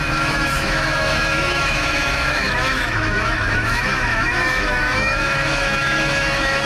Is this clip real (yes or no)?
no